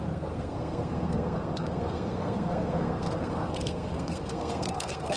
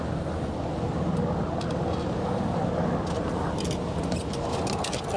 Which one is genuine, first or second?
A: second